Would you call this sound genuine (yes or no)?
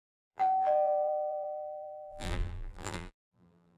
no